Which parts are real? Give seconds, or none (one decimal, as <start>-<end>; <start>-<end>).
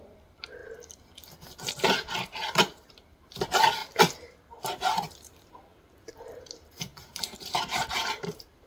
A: 0.6-1.7; 3.8-4.6